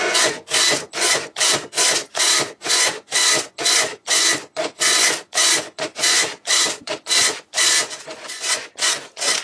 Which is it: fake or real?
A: fake